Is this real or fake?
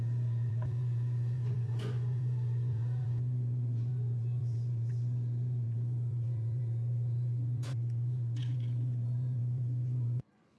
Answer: fake